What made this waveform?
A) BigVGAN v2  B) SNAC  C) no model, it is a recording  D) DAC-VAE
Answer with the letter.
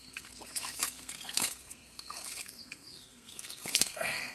B